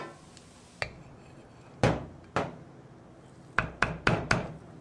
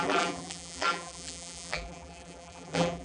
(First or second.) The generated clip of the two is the second